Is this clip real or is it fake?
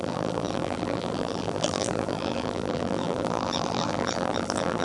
fake